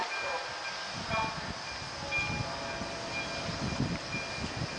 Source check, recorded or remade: recorded